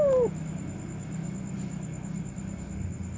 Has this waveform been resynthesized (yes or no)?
no